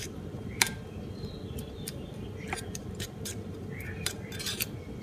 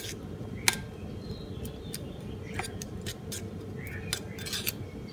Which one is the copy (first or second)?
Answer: first